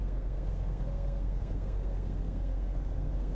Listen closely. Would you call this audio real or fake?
fake